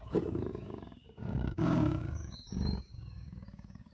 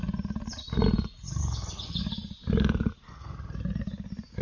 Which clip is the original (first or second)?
second